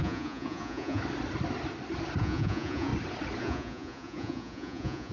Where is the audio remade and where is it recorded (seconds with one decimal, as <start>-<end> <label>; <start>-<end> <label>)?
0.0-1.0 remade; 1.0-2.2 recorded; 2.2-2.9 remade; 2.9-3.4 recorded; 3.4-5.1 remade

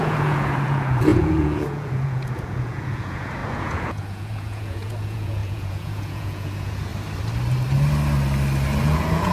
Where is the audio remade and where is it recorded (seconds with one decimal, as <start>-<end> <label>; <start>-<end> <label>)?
0.0-6.9 remade; 6.9-8.8 recorded; 8.8-9.3 remade

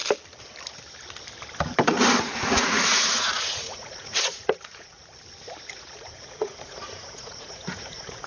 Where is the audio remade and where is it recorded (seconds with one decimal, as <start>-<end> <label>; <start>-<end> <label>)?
0.0-2.2 recorded; 2.2-5.0 remade; 5.0-5.7 recorded; 5.7-8.3 remade

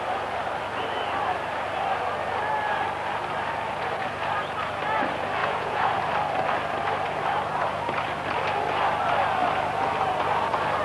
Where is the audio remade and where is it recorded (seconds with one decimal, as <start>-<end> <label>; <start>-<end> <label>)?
0.0-5.4 recorded; 5.4-6.0 remade; 6.0-10.8 recorded